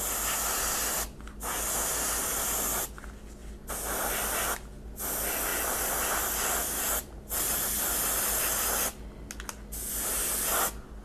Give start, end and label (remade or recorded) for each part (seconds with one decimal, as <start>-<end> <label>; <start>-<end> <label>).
0.0-11.0 recorded